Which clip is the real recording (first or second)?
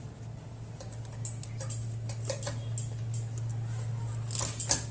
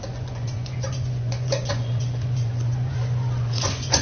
first